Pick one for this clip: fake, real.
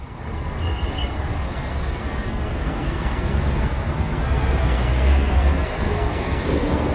fake